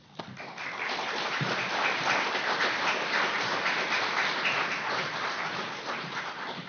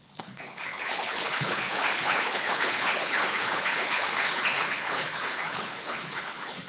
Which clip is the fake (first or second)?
second